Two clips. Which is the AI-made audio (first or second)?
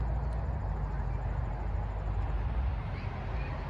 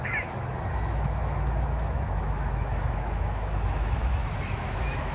second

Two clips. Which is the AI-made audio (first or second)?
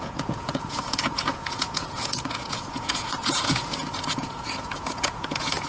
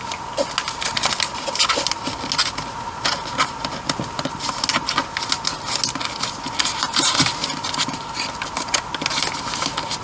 first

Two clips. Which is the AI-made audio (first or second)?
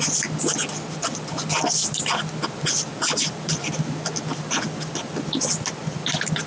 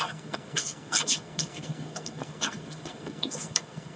second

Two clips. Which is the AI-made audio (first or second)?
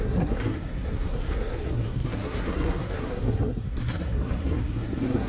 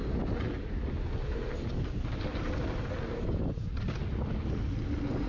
first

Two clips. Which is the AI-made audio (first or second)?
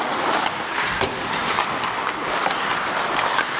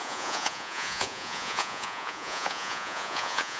second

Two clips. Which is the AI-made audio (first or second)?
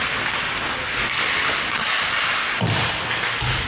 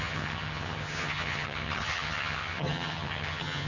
second